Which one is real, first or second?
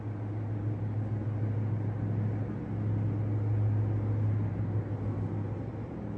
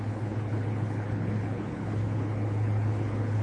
first